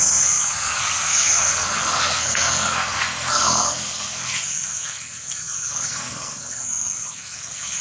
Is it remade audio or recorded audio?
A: remade